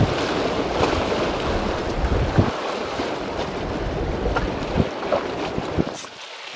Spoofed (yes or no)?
no